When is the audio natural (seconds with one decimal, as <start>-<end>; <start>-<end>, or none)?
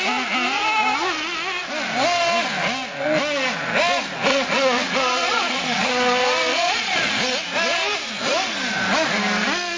0.0-4.3; 5.9-6.5; 7.1-9.8